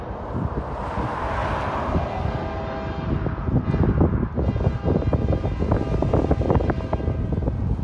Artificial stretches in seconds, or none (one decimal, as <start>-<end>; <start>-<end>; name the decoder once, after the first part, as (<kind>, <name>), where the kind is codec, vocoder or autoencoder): none